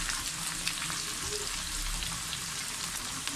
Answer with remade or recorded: recorded